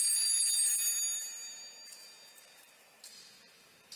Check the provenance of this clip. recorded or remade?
recorded